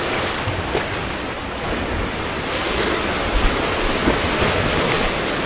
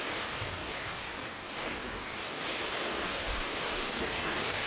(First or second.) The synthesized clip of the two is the second